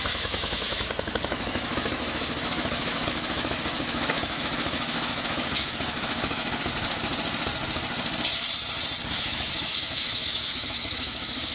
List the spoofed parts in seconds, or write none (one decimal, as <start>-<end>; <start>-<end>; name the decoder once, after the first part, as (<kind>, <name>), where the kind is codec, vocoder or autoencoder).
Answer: 0.0-6.7 (autoencoder, DAC-VAE); 9.1-11.5

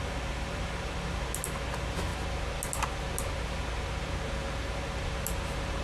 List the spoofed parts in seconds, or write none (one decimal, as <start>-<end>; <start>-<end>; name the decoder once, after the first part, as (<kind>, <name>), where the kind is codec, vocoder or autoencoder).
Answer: none

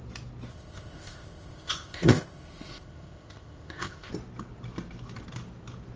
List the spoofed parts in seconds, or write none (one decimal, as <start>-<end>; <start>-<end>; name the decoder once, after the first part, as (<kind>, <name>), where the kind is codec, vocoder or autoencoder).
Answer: 0.5-4.1 (codec, ZipCodec)

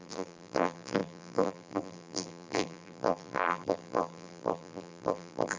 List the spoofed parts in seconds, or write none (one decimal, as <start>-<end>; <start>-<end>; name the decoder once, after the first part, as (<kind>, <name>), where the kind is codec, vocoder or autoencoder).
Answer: 0.0-5.6 (vocoder, BigVGAN v2)

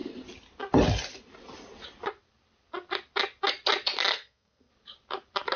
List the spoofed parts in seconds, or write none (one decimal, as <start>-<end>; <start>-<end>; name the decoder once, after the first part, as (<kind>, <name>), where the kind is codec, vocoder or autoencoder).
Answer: 4.1-4.7 (codec, SNAC)

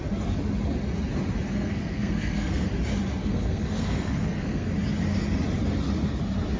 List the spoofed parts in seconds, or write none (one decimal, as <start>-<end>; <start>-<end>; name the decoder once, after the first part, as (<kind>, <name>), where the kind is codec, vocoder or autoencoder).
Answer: 1.5-2.7 (codec, SNAC); 3.2-4.7